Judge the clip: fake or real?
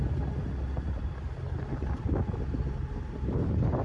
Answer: real